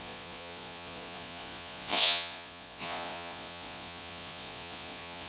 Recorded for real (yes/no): no